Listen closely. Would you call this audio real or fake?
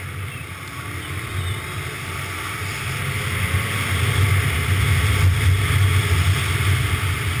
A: real